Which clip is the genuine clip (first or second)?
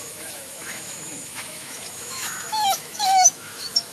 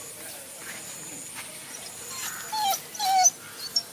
second